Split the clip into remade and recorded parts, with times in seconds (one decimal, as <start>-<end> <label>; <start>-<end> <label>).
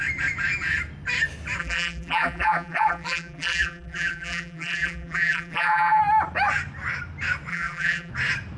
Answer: 0.0-1.6 recorded; 1.6-6.0 remade; 6.0-7.5 recorded; 7.5-8.1 remade; 8.1-8.6 recorded